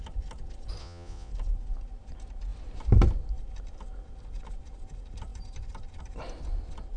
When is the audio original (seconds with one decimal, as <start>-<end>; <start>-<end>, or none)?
0.0-0.8; 1.3-7.0